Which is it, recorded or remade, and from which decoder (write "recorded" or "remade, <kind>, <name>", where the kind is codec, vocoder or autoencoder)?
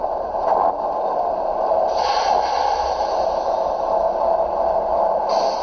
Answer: recorded